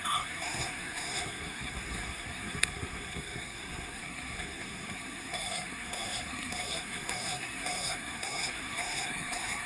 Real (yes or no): no